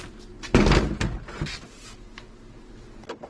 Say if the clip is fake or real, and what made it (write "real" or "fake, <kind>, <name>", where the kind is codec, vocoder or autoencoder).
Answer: real